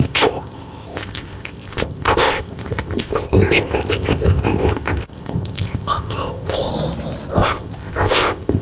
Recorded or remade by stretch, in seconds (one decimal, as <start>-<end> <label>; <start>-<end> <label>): 0.0-6.7 remade; 6.7-7.3 recorded; 7.3-8.6 remade